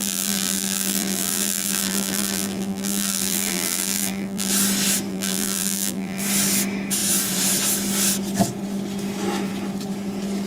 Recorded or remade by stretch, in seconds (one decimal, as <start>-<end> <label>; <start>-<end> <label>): 0.0-4.5 remade; 4.5-5.1 recorded; 5.1-6.2 remade; 6.2-10.5 recorded